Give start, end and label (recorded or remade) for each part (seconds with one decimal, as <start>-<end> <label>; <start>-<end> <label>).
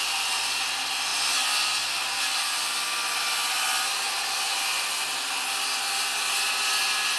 0.0-7.2 recorded